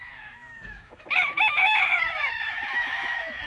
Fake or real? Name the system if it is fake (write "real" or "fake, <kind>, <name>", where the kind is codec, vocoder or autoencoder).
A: fake, autoencoder, DAC-VAE